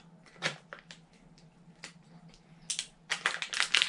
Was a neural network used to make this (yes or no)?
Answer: no